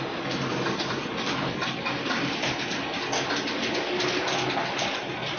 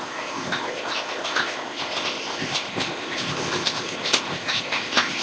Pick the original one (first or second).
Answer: first